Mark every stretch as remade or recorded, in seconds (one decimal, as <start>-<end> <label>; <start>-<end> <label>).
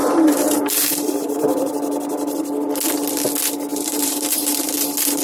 0.0-1.7 remade; 1.7-3.7 recorded; 3.7-4.7 remade; 4.7-5.2 recorded